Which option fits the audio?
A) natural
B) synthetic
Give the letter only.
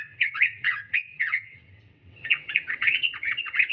B